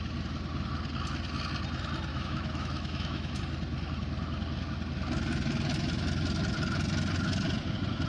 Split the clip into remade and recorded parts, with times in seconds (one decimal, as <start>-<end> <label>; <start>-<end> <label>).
0.0-2.1 recorded; 2.1-3.4 remade; 3.4-8.1 recorded